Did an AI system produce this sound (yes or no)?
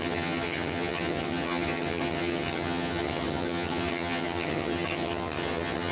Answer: yes